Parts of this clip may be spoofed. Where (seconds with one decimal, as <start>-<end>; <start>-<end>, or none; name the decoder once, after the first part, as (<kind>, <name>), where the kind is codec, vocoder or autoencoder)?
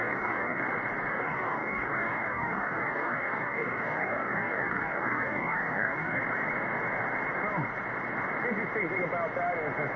0.0-0.6 (codec, DAC); 1.1-6.2